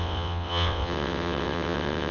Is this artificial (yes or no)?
yes